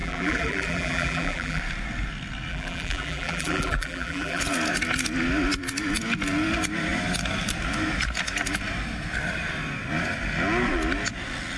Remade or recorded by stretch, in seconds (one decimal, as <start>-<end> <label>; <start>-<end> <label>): 0.0-1.6 remade; 1.6-2.5 recorded; 2.5-4.4 remade; 4.4-11.6 recorded